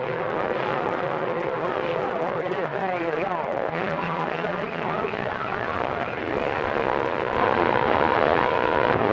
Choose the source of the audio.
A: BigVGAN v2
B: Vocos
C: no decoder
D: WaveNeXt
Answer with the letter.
B